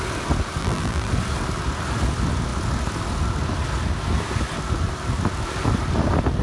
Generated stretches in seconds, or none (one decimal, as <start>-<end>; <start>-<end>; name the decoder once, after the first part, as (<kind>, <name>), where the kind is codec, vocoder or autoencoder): 0.6-1.1 (vocoder, BigVGAN v2)